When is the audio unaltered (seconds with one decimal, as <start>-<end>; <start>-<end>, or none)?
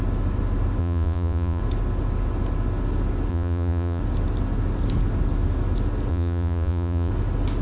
0.0-0.8; 1.6-3.3; 4.0-6.1; 7.1-7.6